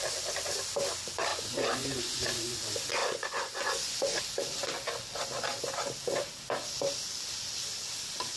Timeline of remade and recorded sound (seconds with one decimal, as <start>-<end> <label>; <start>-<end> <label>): 0.0-1.3 recorded; 1.3-2.2 remade; 2.2-3.0 recorded; 3.0-4.2 remade; 4.2-8.4 recorded